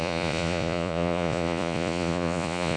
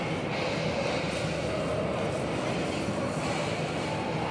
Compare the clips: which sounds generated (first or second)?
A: first